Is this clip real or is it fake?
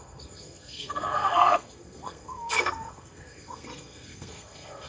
fake